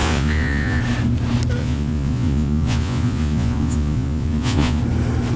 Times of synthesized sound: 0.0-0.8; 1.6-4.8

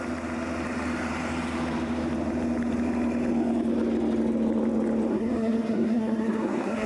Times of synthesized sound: 5.1-6.9

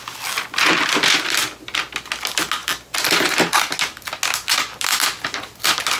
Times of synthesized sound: none

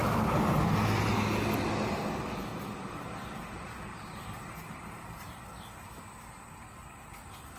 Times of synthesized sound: 2.5-7.1